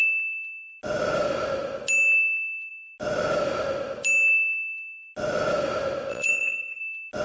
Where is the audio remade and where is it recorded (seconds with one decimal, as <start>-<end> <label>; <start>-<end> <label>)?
0.0-6.1 recorded; 6.1-6.8 remade; 6.8-7.2 recorded